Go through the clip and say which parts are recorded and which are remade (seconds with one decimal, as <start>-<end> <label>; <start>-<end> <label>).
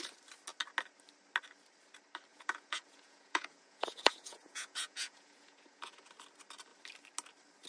0.0-2.3 recorded; 2.3-6.1 remade; 6.1-7.7 recorded